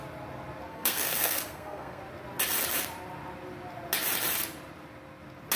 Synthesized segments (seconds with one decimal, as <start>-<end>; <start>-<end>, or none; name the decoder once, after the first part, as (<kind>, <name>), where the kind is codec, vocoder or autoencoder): 0.7-2.0 (codec, SNAC)